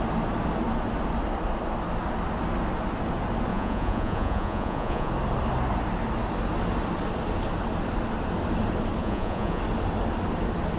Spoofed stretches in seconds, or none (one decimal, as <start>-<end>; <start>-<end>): 3.5-5.1; 9.0-9.6